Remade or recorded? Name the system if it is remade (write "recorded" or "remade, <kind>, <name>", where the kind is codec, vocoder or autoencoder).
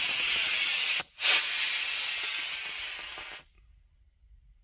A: recorded